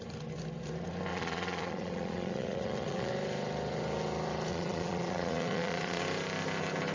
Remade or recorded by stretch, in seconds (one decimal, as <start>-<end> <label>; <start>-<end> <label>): 0.0-1.1 recorded; 1.1-3.1 remade; 3.1-4.5 recorded; 4.5-6.0 remade; 6.0-6.9 recorded